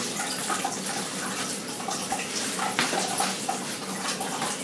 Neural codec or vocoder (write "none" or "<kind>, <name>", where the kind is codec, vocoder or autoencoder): none